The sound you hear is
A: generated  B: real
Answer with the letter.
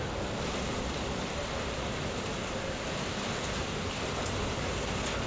B